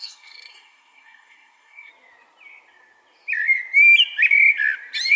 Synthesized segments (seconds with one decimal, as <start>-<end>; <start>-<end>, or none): 0.0-1.9